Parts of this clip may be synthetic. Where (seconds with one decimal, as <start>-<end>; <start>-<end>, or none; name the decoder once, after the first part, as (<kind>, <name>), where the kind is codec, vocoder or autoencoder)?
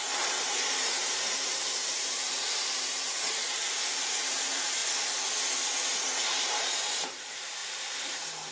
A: 0.0-4.8 (vocoder, BigVGAN v2); 6.0-8.5